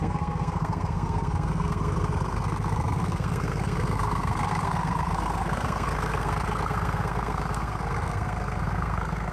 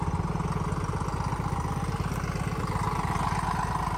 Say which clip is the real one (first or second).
second